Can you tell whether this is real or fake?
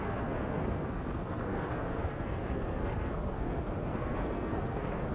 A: fake